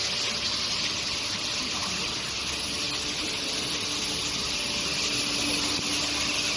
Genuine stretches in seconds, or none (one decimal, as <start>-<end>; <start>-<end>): 0.0-6.6